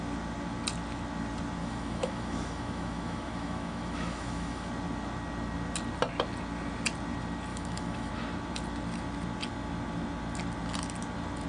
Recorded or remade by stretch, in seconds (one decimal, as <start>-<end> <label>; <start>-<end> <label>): 0.0-1.6 recorded; 1.6-4.7 remade; 4.7-7.5 recorded; 7.5-8.1 remade; 8.1-11.5 recorded